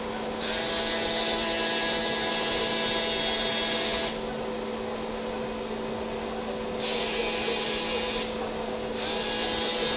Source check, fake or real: real